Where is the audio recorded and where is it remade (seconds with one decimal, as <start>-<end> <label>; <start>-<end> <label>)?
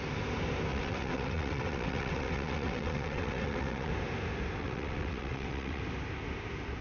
0.0-0.7 recorded; 0.7-3.9 remade; 3.9-4.6 recorded; 4.6-5.8 remade; 5.8-6.8 recorded